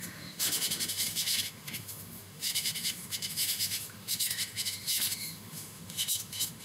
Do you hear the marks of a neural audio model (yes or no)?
yes